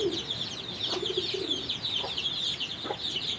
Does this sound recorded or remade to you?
recorded